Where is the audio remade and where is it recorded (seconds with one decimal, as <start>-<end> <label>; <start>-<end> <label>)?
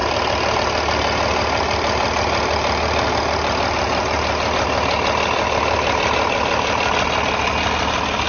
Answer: 0.0-8.3 recorded